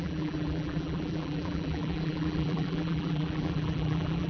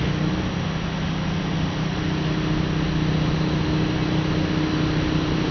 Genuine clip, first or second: second